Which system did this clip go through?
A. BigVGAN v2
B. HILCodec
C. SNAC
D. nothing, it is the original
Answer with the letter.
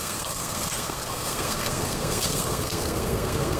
C